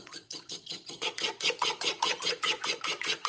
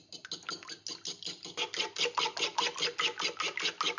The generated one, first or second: first